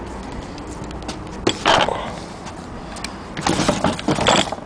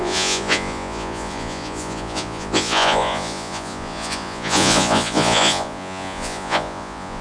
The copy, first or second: second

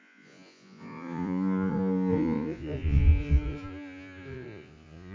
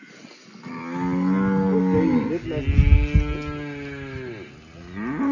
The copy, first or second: first